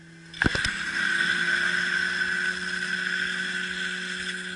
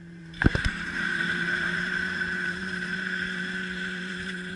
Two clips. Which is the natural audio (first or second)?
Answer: first